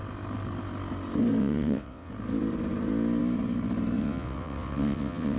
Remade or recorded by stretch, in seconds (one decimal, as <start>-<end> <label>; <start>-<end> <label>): 0.0-1.4 recorded; 1.4-2.1 remade; 2.1-4.0 recorded; 4.0-5.4 remade